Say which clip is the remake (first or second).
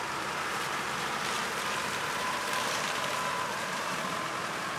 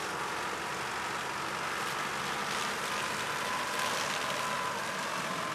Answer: first